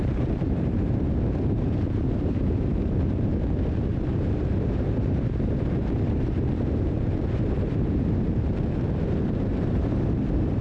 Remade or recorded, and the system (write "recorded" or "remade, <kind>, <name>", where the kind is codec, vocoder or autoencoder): remade, vocoder, BigVGAN v2